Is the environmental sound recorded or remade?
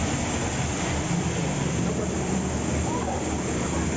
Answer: recorded